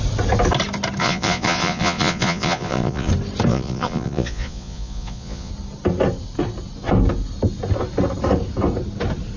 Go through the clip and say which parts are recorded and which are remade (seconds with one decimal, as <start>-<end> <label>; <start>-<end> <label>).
0.0-1.0 recorded; 1.0-3.1 remade; 3.1-3.5 recorded; 3.5-5.5 remade; 5.5-9.4 recorded